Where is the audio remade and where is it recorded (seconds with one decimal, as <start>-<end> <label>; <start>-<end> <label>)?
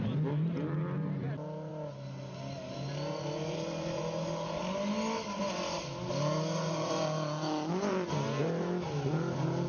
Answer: 0.0-9.7 recorded